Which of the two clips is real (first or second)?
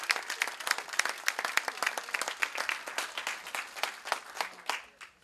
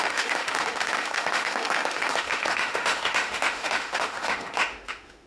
first